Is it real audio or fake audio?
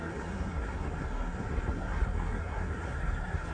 fake